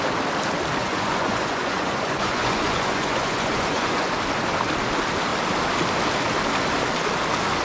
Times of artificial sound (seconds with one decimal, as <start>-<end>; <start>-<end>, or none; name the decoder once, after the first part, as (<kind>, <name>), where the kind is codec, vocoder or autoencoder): 0.8-4.1 (vocoder, Vocos)